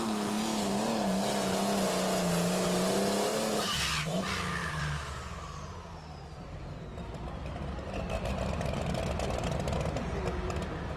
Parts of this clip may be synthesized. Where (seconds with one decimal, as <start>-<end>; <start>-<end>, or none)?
3.3-3.8; 4.6-9.3